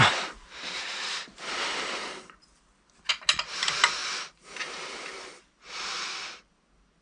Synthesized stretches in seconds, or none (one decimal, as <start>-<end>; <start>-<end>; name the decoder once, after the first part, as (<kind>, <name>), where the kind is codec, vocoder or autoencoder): 1.7-3.1 (vocoder, BigVGAN v2); 4.0-5.1